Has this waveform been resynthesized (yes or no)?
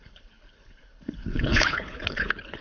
yes